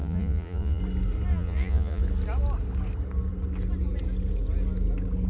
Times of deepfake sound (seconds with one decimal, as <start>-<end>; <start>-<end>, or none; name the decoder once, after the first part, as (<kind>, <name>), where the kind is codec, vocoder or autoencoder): 0.0-0.8 (vocoder, Vocos); 1.3-2.0